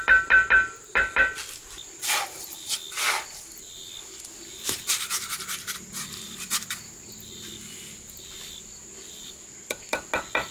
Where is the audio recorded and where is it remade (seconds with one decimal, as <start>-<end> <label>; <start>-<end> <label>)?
0.0-10.5 recorded

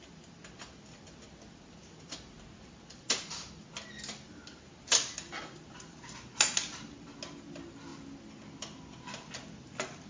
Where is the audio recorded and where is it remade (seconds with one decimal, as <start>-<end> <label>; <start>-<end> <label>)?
0.0-10.1 recorded

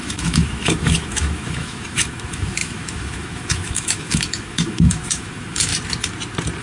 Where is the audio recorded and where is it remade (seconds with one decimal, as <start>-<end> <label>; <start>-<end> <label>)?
0.0-5.7 remade; 5.7-6.6 recorded

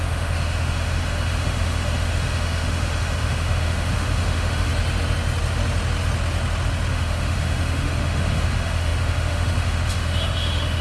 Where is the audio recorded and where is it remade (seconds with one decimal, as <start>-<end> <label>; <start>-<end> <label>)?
0.0-4.7 remade; 4.7-6.9 recorded; 6.9-10.8 remade

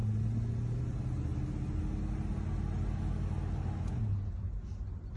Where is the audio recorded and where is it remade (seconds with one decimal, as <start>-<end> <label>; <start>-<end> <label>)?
0.0-5.2 recorded

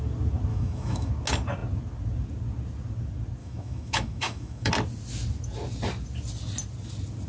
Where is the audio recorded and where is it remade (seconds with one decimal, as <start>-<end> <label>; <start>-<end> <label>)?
0.0-0.5 recorded; 0.5-1.1 remade; 1.1-3.4 recorded; 3.4-4.7 remade; 4.7-7.3 recorded

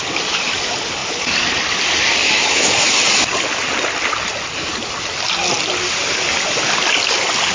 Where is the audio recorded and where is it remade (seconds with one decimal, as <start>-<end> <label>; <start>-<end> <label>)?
0.0-2.2 recorded; 2.2-2.9 remade; 2.9-7.5 recorded